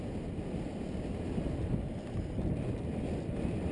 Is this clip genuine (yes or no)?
yes